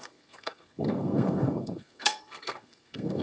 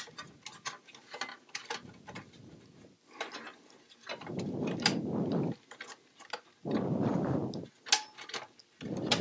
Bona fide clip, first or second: second